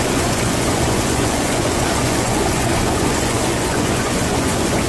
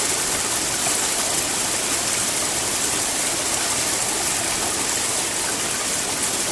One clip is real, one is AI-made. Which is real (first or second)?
second